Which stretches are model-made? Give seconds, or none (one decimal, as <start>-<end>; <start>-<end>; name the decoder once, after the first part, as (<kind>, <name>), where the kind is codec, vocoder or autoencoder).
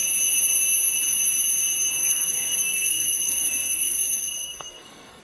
2.0-5.2 (codec, SNAC)